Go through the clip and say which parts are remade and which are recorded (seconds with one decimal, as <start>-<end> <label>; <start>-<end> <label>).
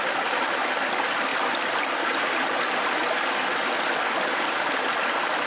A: 0.0-5.5 recorded